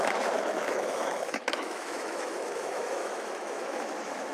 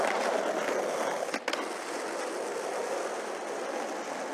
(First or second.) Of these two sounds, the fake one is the first